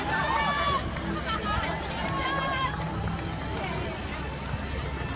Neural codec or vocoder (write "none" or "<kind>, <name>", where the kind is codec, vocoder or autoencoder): none